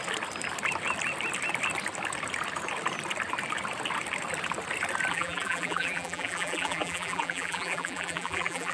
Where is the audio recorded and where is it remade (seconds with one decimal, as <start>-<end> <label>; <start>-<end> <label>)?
0.0-5.1 recorded; 5.1-8.7 remade